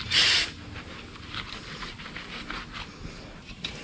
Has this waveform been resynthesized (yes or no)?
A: no